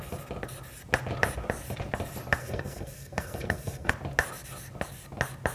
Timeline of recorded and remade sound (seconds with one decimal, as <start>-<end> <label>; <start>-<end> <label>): 0.0-2.4 recorded; 2.4-3.9 remade; 3.9-5.5 recorded